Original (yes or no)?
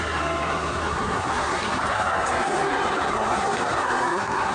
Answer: no